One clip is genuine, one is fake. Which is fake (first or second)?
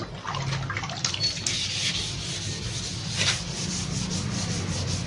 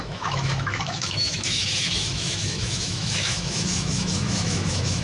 second